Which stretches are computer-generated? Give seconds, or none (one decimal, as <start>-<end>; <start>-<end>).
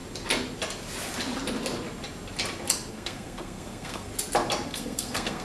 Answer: 2.9-4.1; 4.7-5.4